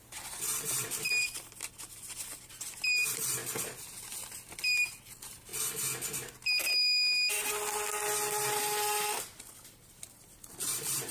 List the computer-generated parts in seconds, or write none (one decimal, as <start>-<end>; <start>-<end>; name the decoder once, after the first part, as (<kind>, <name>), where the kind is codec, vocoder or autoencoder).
0.0-3.4 (vocoder, BigVGAN v2); 4.4-5.5; 9.5-11.1

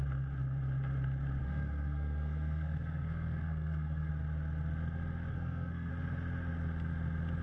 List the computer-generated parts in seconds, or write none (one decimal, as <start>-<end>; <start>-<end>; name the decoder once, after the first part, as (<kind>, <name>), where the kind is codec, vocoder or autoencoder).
1.4-4.1 (codec, SNAC); 5.3-5.9

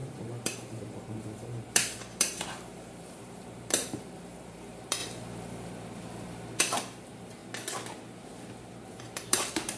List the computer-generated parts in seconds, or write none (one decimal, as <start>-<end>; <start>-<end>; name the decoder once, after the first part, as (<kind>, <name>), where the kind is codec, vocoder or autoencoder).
0.0-5.0 (vocoder, BigVGAN v2); 6.6-7.4; 9.0-9.8

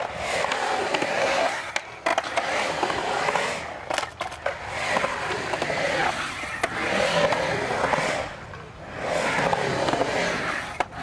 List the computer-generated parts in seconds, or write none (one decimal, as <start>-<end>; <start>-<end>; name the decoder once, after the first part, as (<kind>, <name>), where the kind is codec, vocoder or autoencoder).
1.1-1.7 (codec, SNAC)

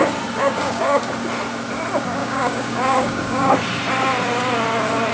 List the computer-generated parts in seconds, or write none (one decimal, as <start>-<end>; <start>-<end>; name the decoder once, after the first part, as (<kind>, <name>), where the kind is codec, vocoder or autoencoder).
0.4-1.0 (codec, DAC); 2.2-3.5

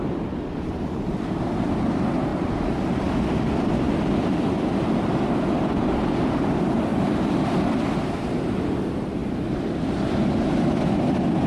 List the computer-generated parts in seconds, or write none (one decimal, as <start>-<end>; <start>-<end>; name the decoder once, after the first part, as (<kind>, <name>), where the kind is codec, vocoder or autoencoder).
2.3-6.3 (vocoder, BigVGAN v2); 6.9-7.6; 9.2-10.3